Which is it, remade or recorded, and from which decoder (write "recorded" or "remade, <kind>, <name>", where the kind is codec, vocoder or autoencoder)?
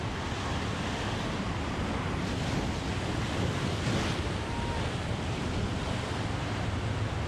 recorded